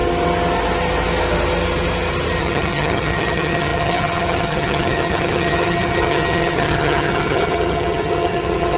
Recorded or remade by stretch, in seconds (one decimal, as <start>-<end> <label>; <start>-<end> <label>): 0.0-2.4 recorded; 2.4-8.8 remade